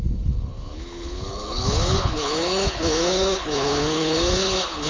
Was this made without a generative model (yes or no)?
no